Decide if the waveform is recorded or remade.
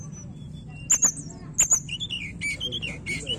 recorded